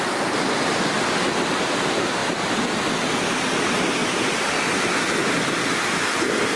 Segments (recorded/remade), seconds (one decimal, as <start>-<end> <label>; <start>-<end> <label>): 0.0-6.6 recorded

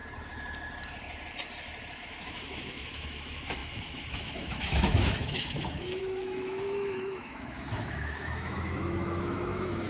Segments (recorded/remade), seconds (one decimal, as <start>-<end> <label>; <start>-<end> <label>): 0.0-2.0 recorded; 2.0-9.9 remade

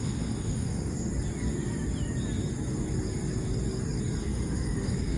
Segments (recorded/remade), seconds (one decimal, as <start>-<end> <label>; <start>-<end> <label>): 0.0-1.1 remade; 1.1-4.2 recorded; 4.2-5.2 remade

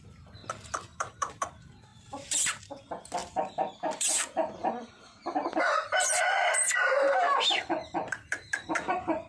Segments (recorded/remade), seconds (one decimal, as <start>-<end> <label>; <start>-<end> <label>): 0.0-9.3 remade

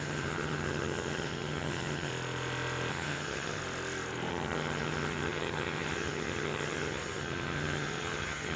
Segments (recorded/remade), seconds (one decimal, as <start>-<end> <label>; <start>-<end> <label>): 0.0-2.1 remade; 2.1-2.9 recorded; 2.9-3.6 remade; 3.6-4.3 recorded; 4.3-8.6 remade